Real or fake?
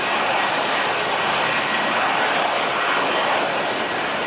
real